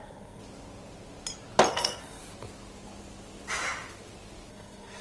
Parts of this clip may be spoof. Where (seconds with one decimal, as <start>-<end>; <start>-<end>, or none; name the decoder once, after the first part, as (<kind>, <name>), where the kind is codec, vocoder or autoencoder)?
0.0-0.4 (codec, SNAC); 1.7-2.2; 4.5-5.0